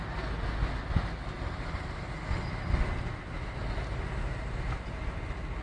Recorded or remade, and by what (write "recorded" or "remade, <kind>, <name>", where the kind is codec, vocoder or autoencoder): recorded